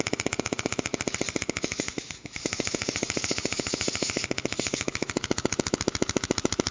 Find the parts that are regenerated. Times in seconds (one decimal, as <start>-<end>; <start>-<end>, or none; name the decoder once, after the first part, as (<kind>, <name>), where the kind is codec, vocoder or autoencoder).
0.0-0.9 (autoencoder, DAC-VAE); 1.4-6.7